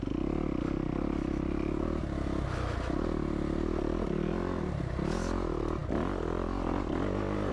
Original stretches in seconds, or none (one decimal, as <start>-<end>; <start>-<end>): 0.0-7.5